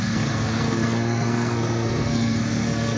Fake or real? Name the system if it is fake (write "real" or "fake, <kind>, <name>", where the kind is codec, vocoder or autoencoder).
fake, codec, SNAC